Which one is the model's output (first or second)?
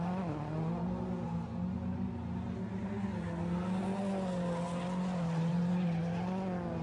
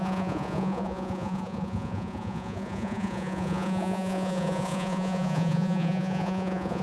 second